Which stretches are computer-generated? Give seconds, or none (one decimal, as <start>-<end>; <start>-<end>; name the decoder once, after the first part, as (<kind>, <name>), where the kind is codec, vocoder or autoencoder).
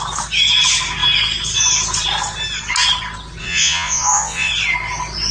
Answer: 3.4-4.5 (vocoder, Vocos)